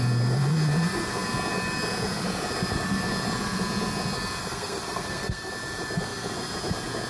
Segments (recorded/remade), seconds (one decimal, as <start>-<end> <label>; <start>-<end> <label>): 0.0-4.4 recorded; 4.4-5.5 remade; 5.5-7.1 recorded